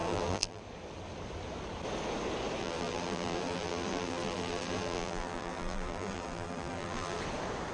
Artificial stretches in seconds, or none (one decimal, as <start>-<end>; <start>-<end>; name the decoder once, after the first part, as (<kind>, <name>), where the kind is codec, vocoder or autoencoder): 0.0-0.6 (vocoder, BigVGAN v2); 2.6-7.2